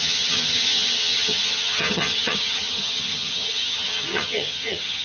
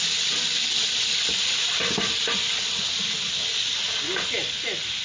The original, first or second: second